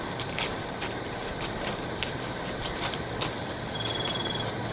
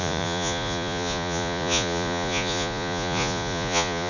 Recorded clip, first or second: first